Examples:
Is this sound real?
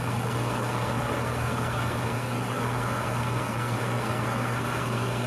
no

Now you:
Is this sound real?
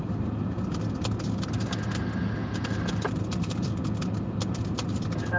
yes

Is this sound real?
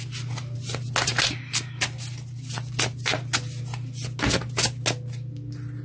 yes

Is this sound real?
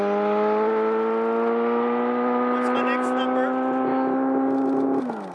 yes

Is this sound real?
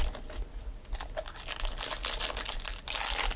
yes